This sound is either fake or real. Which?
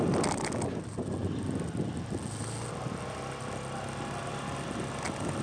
real